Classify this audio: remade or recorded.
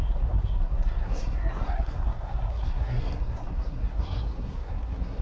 remade